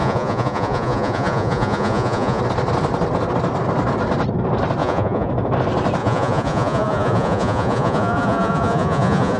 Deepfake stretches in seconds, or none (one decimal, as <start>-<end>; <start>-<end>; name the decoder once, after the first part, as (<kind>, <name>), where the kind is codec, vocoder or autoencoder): 0.0-2.4 (vocoder, Vocos); 4.8-5.3; 6.0-9.4